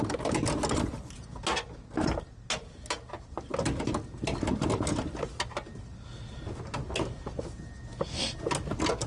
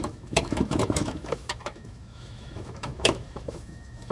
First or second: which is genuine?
first